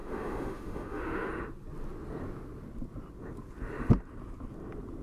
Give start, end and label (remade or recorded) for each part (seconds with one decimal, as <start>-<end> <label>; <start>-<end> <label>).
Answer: 0.0-1.3 remade; 1.3-5.0 recorded